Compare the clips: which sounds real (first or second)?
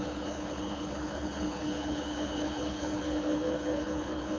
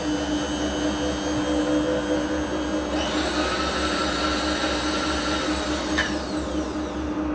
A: second